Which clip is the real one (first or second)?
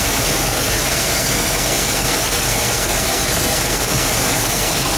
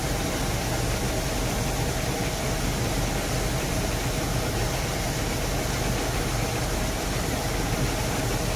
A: second